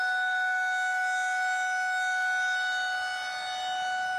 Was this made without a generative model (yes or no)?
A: yes